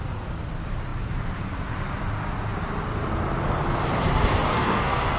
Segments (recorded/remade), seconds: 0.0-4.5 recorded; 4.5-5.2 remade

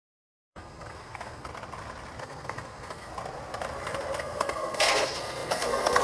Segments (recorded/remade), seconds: 0.0-1.5 remade; 1.5-2.2 recorded; 2.2-3.1 remade; 3.1-4.2 recorded; 4.2-6.0 remade

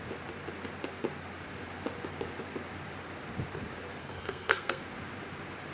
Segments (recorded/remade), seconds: 0.0-4.0 recorded; 4.0-4.8 remade; 4.8-5.7 recorded

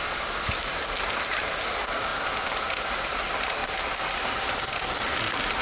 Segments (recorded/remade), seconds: 0.0-5.6 recorded